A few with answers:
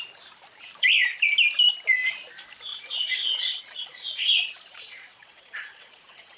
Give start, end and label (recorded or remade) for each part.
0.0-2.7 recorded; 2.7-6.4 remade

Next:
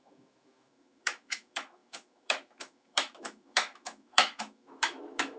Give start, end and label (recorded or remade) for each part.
0.0-5.4 remade

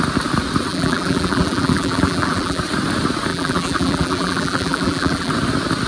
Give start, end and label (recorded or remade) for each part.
0.0-0.7 recorded; 0.7-2.6 remade; 2.6-3.3 recorded; 3.3-5.3 remade; 5.3-5.9 recorded

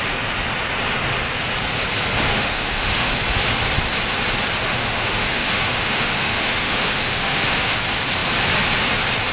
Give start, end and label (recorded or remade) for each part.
0.0-2.3 recorded; 2.3-3.1 remade; 3.1-4.7 recorded; 4.7-7.8 remade; 7.8-9.3 recorded

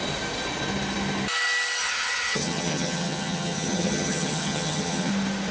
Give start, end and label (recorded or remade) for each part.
0.0-1.8 recorded; 1.8-5.1 remade; 5.1-5.5 recorded